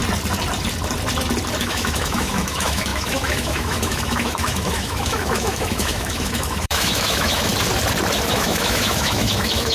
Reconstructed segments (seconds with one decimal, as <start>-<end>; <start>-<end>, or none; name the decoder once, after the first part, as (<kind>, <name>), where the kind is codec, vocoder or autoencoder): 1.6-7.5 (autoencoder, DAC-VAE); 8.3-9.7